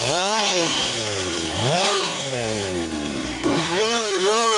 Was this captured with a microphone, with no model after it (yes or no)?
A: no